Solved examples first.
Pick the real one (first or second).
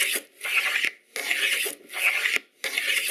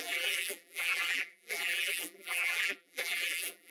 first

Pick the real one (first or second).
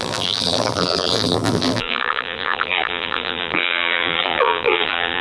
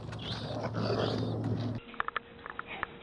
second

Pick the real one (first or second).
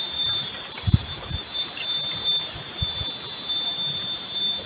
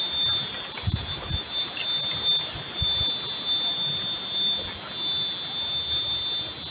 second